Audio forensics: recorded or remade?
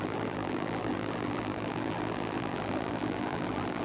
remade